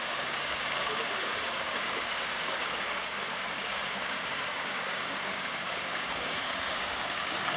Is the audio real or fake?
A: fake